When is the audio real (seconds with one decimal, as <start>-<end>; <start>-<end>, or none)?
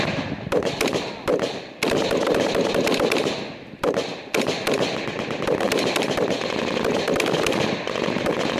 0.0-8.6